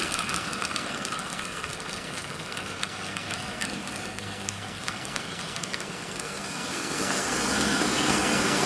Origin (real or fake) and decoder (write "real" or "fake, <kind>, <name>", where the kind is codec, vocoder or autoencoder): fake, codec, SNAC